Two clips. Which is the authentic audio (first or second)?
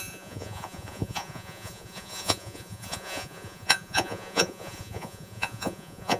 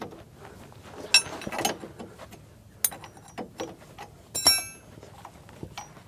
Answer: second